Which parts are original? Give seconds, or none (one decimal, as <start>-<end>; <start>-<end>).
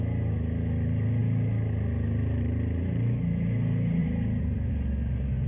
0.0-4.0; 4.7-5.5